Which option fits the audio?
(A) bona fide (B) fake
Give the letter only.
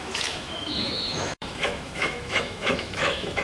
B